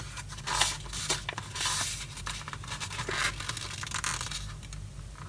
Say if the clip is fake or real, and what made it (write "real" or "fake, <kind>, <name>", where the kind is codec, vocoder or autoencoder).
real